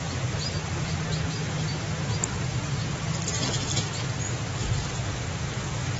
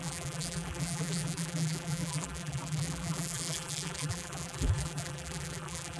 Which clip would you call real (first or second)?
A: first